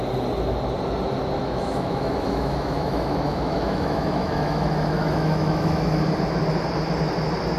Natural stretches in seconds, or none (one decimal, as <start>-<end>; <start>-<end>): 0.0-1.4; 6.0-7.6